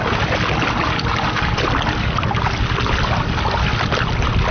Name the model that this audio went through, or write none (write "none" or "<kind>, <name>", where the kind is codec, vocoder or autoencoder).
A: none